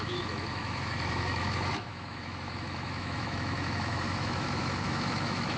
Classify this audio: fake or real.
fake